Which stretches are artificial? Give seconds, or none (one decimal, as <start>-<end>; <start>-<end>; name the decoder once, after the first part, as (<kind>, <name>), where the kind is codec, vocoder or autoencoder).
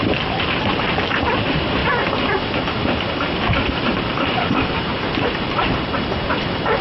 0.0-1.8 (vocoder, BigVGAN v2); 3.8-6.8